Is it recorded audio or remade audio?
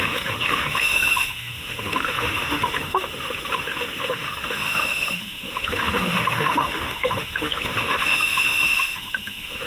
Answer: remade